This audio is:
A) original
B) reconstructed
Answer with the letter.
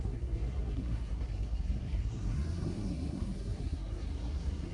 B